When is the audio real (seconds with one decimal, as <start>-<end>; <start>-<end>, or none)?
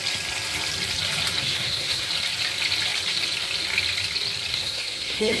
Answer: 0.0-1.4; 2.1-4.5